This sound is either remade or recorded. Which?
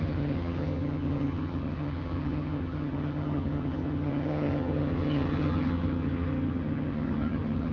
remade